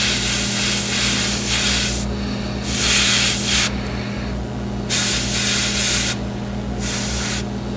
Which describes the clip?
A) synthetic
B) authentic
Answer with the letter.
B